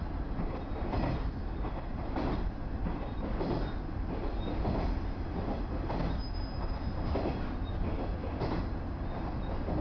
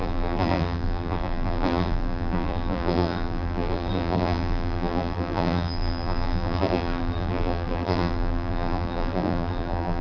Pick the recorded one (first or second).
first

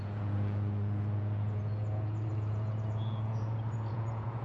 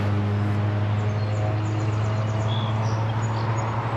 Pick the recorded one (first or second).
second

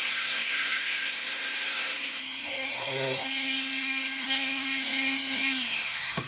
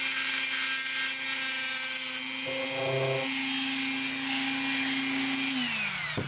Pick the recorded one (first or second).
second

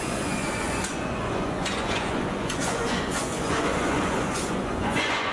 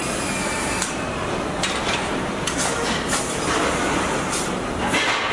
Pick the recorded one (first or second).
second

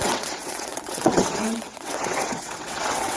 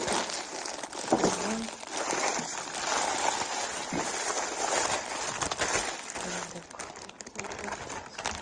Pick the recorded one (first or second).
second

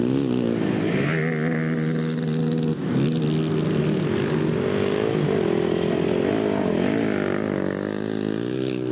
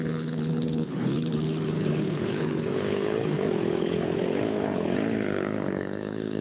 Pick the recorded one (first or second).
first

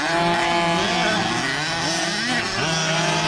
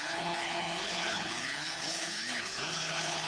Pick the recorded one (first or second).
first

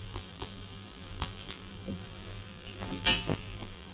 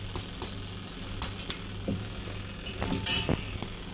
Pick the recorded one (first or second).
second